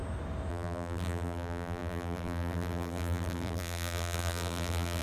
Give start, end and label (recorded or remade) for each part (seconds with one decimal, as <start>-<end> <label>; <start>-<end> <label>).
0.0-0.5 recorded; 0.5-5.0 remade